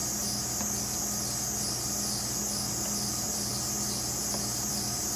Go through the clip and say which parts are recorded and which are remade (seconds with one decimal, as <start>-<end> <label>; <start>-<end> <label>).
0.0-3.1 recorded; 3.1-3.5 remade; 3.5-4.7 recorded; 4.7-5.2 remade